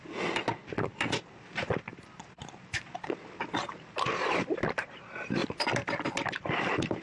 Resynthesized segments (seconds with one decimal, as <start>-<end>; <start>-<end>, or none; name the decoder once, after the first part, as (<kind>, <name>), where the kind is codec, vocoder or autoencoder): none